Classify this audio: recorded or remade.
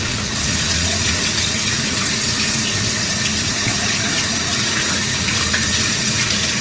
remade